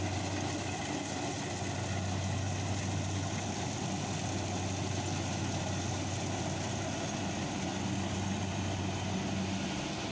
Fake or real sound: real